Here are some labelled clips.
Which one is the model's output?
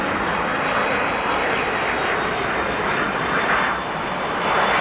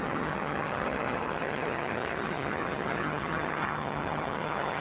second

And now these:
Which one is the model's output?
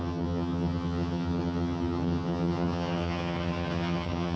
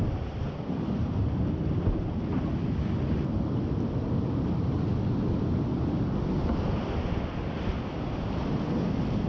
first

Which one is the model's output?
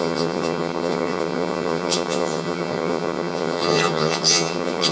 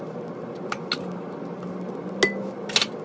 first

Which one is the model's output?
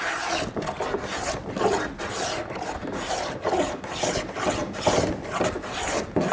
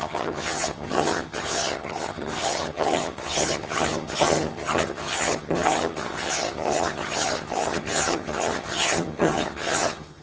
second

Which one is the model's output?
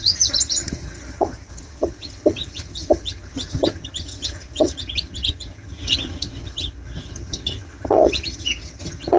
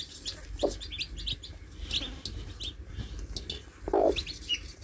first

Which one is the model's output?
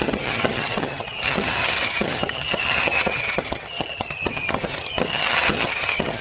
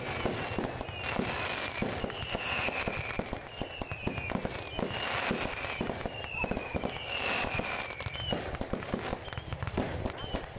first